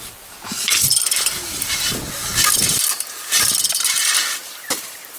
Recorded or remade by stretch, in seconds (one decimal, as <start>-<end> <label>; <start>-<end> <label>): 0.0-4.4 recorded; 4.4-5.2 remade